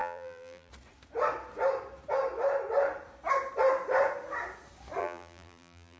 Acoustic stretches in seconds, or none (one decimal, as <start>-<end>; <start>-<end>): 0.7-5.0